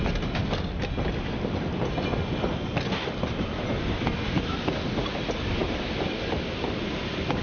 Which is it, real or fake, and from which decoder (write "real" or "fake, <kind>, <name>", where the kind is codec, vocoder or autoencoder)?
real